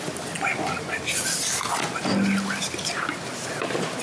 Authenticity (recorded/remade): recorded